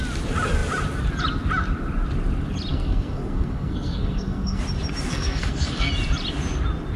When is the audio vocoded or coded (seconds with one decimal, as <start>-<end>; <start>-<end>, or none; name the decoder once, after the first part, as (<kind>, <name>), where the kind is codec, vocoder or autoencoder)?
2.7-4.6 (codec, SNAC); 5.1-5.9